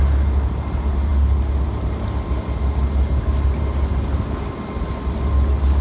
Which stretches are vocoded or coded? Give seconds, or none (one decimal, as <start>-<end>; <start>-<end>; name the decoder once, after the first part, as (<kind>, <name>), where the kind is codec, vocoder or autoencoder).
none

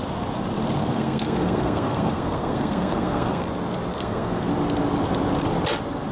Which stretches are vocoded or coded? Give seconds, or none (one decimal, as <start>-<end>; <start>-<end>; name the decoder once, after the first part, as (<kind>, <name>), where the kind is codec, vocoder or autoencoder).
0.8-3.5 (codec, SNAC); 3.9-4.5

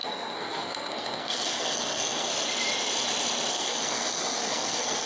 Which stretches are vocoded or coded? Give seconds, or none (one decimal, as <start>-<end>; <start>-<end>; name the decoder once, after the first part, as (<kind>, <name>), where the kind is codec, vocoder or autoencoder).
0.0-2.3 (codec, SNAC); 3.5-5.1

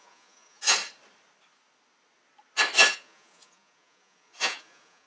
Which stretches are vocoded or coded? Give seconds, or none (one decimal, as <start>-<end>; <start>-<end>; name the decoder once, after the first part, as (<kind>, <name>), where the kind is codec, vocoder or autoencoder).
0.0-0.8 (vocoder, Vocos); 2.9-5.1

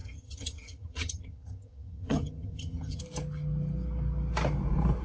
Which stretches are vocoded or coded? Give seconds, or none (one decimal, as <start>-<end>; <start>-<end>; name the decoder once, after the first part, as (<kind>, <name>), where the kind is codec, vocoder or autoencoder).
0.0-3.0 (vocoder, HiFi-GAN)

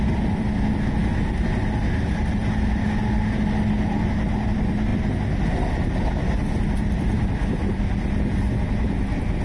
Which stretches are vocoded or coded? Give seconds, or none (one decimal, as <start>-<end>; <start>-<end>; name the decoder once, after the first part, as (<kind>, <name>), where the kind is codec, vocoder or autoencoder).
none

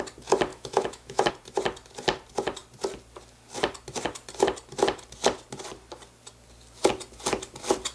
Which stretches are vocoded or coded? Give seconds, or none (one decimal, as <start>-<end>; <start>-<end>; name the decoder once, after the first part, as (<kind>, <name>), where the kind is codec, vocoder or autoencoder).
0.5-1.3 (autoencoder, DAC-VAE)